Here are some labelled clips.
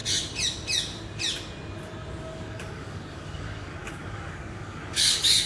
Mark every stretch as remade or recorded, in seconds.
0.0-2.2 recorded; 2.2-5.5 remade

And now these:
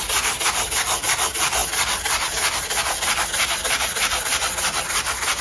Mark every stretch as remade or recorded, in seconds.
0.0-5.4 recorded

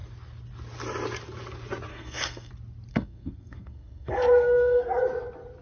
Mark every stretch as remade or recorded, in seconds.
0.0-1.9 recorded; 1.9-2.5 remade; 2.5-2.9 recorded; 2.9-5.0 remade; 5.0-5.6 recorded

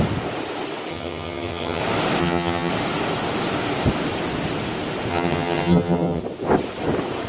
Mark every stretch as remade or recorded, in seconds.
0.0-0.9 recorded; 0.9-1.8 remade; 1.8-2.2 recorded; 2.2-2.7 remade; 2.7-5.1 recorded; 5.1-6.2 remade; 6.2-7.3 recorded

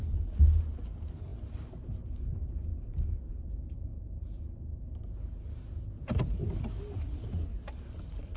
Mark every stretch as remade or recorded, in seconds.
0.0-0.7 recorded; 0.7-2.7 remade; 2.7-3.3 recorded; 3.3-3.9 remade; 3.9-8.4 recorded

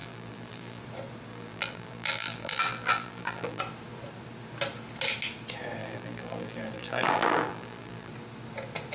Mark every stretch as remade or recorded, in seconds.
0.0-0.8 remade; 0.8-1.3 recorded; 1.3-3.6 remade; 3.6-5.8 recorded; 5.8-8.1 remade; 8.1-8.9 recorded